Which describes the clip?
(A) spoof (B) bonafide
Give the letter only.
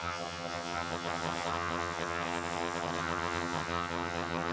A